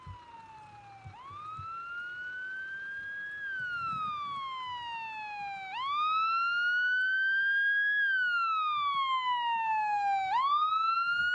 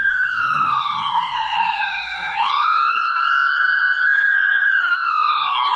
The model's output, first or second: second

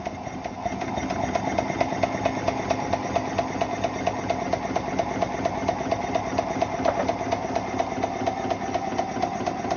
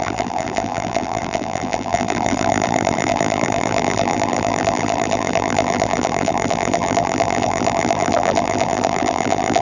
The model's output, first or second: second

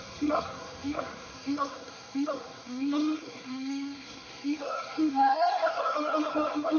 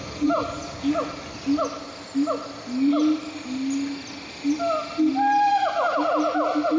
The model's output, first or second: first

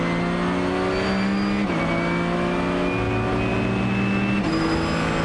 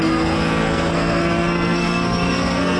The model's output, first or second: second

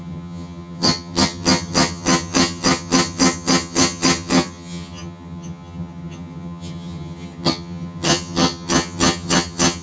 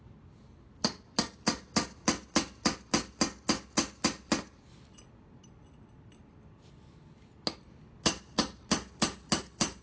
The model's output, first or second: first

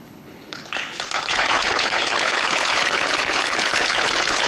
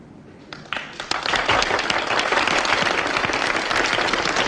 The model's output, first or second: first